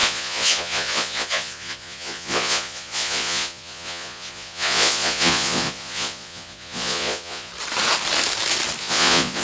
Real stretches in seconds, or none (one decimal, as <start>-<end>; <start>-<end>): 7.5-8.8